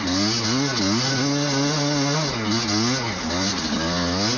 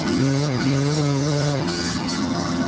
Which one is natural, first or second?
first